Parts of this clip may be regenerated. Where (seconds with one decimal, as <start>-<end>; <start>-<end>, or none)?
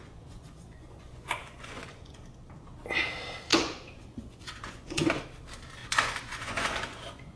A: 0.0-2.2; 3.5-5.2; 5.8-7.4